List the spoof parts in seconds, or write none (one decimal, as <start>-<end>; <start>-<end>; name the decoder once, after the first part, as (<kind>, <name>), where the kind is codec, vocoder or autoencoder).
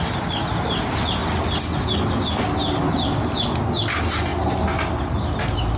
none